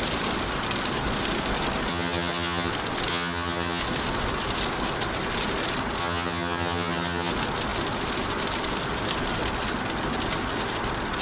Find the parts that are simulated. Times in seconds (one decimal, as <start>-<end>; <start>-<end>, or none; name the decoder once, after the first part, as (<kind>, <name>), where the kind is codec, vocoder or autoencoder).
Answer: 1.9-2.7 (vocoder, HiFi-GAN); 3.1-3.8; 6.0-7.3

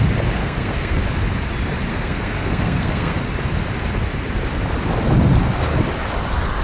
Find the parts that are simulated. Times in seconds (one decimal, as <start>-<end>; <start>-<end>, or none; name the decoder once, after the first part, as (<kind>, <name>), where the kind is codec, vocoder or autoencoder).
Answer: 0.4-1.0 (codec, SNAC); 1.9-3.2

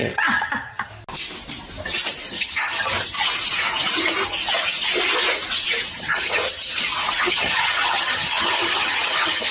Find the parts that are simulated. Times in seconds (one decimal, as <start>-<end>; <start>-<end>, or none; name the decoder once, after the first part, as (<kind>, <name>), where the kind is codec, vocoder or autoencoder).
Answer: 0.0-0.9 (vocoder, HiFi-GAN); 2.3-2.9; 5.9-6.4; 7.3-9.5

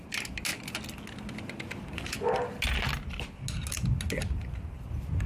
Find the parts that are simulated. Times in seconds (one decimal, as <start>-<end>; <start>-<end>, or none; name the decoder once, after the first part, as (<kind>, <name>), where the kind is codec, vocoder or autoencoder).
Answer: none

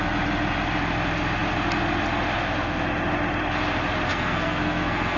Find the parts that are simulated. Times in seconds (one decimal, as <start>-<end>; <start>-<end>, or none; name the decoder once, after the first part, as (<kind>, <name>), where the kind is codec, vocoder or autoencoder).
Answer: 4.1-5.2 (codec, SNAC)